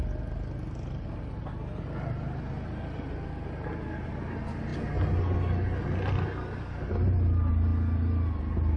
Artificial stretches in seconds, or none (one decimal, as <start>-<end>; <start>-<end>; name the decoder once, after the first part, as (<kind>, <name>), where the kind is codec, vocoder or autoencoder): none